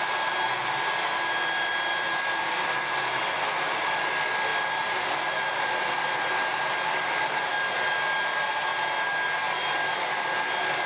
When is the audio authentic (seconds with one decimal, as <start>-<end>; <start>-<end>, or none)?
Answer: 0.0-4.5; 5.9-10.9